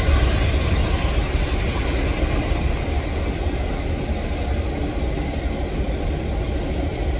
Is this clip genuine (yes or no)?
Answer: yes